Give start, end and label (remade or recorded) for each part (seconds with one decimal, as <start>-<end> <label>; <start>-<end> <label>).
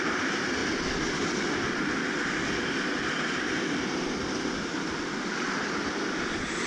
0.0-6.7 recorded